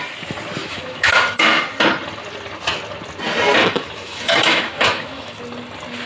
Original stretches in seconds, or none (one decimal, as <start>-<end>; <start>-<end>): 0.0-0.6; 1.6-3.6; 5.4-6.1